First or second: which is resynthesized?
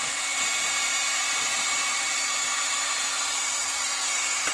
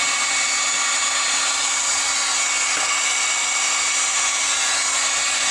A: first